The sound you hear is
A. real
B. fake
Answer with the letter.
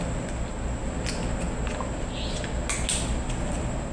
A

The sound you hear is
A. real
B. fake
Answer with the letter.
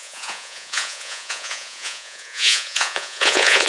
B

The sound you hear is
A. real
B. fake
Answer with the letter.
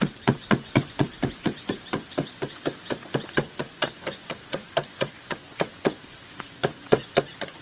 B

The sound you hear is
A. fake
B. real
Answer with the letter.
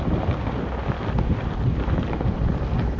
B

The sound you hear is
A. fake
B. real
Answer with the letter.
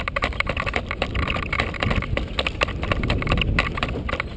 B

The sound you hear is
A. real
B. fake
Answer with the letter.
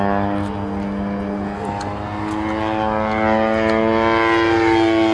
A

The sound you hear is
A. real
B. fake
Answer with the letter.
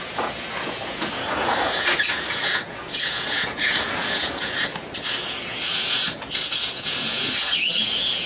B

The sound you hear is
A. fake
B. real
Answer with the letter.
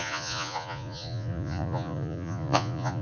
A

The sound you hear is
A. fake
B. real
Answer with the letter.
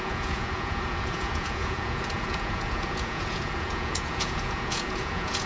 A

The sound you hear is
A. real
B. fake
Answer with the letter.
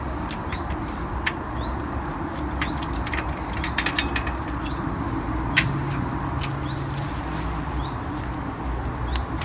A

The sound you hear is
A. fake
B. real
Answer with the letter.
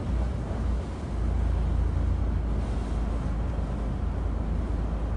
B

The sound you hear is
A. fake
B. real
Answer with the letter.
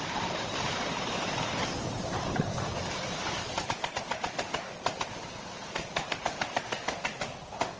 B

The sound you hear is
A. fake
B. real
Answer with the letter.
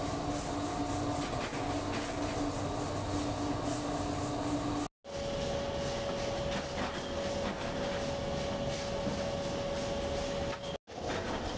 B